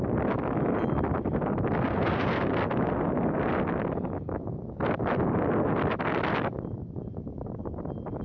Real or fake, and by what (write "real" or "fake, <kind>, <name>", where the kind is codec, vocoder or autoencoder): real